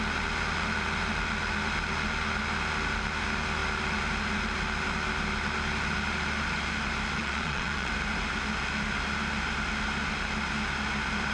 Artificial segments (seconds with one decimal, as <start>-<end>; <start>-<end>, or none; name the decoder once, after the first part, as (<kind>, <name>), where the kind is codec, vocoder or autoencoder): 7.2-7.9 (vocoder, Vocos)